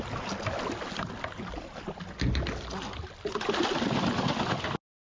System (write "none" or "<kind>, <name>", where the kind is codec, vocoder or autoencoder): none